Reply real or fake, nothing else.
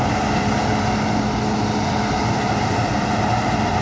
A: real